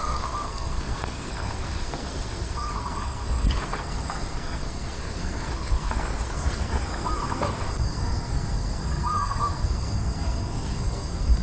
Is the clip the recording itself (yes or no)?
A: no